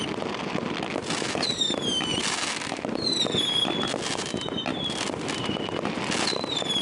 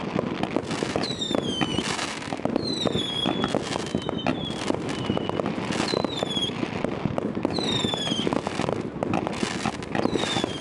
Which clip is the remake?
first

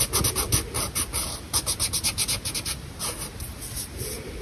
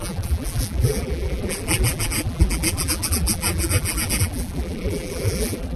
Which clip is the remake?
second